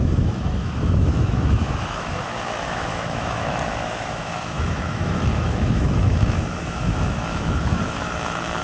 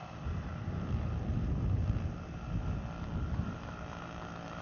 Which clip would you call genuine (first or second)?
second